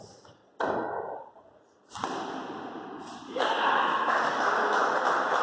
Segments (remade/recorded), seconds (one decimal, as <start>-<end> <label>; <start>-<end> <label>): 0.0-0.4 remade; 0.4-3.6 recorded; 3.6-5.4 remade

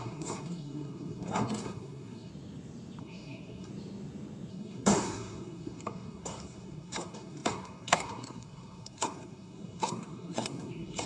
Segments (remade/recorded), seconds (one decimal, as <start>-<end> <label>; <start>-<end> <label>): 0.0-2.3 remade; 2.3-3.0 recorded; 3.0-3.7 remade; 3.7-4.5 recorded; 4.5-11.1 remade

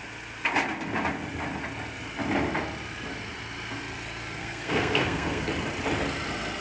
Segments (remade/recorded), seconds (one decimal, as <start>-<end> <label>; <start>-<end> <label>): 0.0-4.4 recorded; 4.4-5.5 remade; 5.5-6.6 recorded

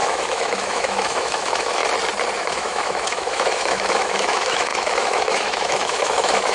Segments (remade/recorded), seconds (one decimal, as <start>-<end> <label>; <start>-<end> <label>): 0.0-1.8 remade; 1.8-2.4 recorded; 2.4-6.5 remade

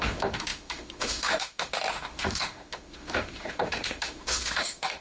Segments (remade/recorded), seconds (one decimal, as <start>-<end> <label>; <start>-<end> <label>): 0.0-5.0 remade

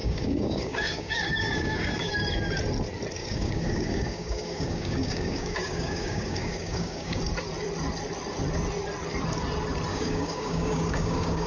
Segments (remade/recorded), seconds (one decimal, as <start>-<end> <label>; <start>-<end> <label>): 0.0-2.1 remade; 2.1-3.2 recorded; 3.2-7.2 remade; 7.2-9.9 recorded; 9.9-11.5 remade